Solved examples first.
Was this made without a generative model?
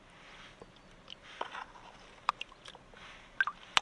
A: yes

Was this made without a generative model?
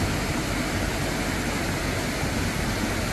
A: yes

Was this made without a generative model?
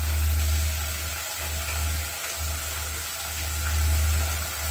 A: yes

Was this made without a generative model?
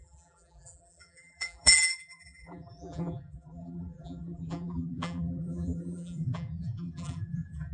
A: no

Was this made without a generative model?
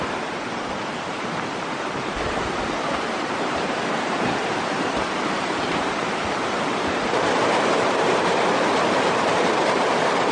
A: no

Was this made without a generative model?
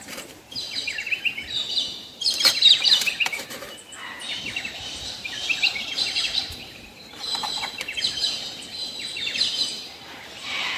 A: no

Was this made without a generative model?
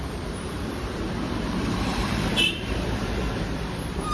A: no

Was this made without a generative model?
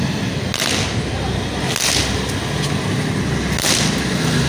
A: yes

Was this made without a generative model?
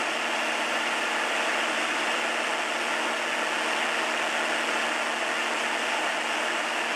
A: yes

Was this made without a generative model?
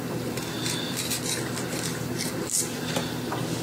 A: no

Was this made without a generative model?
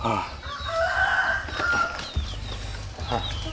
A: yes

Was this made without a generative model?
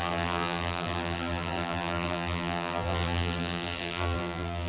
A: no